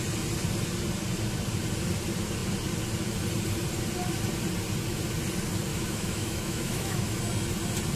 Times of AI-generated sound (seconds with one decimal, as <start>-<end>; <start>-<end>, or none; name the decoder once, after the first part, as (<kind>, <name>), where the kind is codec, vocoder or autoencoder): 5.7-7.2 (autoencoder, DAC-VAE)

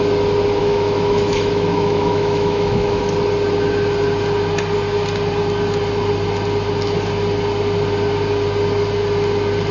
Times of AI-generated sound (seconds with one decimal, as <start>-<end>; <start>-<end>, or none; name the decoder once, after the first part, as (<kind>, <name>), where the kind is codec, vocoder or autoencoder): 0.6-3.0 (autoencoder, DAC-VAE)

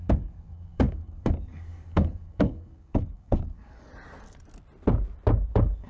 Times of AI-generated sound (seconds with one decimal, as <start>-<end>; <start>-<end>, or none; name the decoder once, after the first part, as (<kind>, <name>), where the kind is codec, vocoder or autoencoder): 0.0-3.9 (codec, DAC); 5.5-5.9

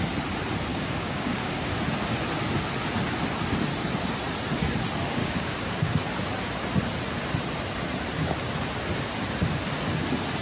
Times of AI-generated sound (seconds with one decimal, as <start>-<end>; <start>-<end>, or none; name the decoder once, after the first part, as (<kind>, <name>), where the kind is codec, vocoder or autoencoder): 0.7-1.7 (codec, DAC); 5.2-6.0

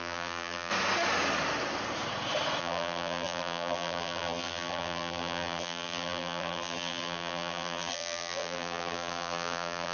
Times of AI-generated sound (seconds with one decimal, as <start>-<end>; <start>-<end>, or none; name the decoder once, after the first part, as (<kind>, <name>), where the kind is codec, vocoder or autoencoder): 0.0-0.7 (vocoder, BigVGAN v2); 2.6-9.9